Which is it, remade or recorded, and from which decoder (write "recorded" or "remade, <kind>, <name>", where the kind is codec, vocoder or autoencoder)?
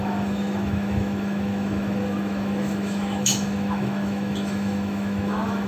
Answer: remade, autoencoder, DAC-VAE